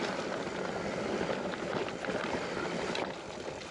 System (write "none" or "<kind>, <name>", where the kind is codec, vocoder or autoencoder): none